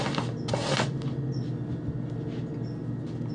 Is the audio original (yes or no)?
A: yes